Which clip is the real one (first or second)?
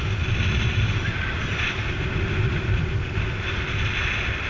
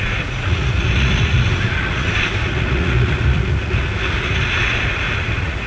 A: first